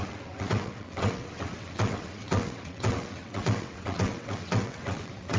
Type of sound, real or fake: fake